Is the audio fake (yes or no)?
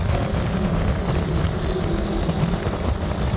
no